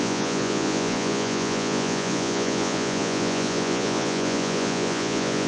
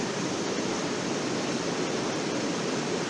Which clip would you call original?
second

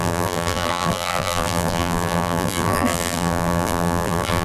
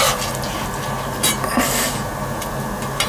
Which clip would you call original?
second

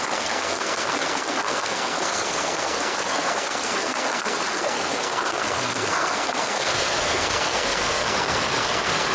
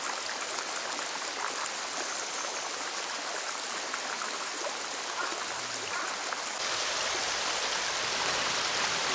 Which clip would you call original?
second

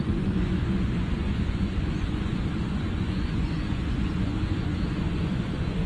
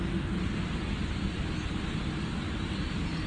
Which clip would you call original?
second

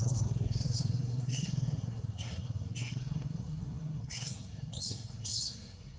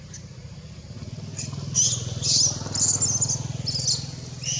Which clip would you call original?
second